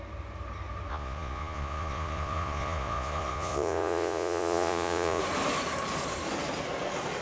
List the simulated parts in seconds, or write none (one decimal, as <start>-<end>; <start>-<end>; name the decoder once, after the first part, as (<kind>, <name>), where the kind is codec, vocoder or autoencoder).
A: 0.9-5.2 (vocoder, Vocos)